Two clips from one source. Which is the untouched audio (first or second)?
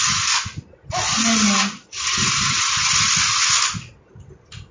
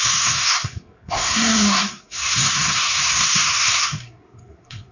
first